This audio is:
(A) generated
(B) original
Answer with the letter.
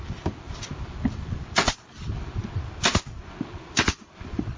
B